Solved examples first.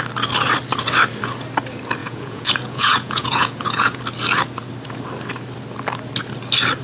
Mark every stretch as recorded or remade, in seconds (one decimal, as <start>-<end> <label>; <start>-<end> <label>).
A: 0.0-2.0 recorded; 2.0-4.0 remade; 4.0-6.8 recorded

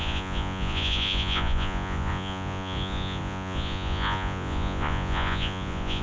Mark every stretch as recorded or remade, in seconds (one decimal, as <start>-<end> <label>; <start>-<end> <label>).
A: 0.0-6.0 remade

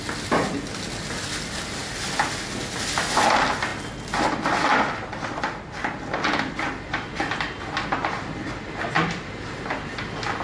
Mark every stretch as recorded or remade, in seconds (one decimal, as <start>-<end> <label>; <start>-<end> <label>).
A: 0.0-10.4 recorded

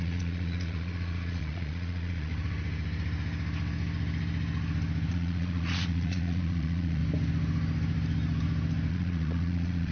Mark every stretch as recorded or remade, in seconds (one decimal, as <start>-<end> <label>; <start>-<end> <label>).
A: 0.0-2.3 remade; 2.3-5.1 recorded; 5.1-7.0 remade; 7.0-8.9 recorded; 8.9-9.9 remade

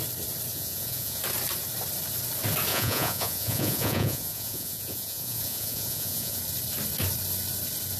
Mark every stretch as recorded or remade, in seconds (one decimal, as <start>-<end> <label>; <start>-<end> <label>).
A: 0.0-0.5 recorded; 0.5-1.2 remade; 1.2-2.7 recorded; 2.7-6.4 remade; 6.4-8.0 recorded

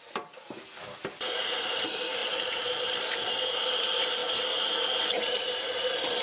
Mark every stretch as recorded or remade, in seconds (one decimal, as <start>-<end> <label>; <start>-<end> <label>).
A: 0.0-2.2 recorded; 2.2-3.3 remade; 3.3-6.2 recorded

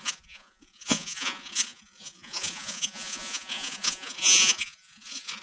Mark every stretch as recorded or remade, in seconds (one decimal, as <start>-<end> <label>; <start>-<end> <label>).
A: 0.0-5.4 remade